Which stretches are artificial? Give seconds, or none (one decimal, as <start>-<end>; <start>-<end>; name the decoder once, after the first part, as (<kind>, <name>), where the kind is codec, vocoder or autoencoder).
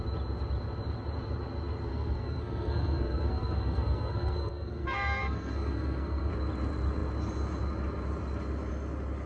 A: 1.9-6.3 (codec, SNAC)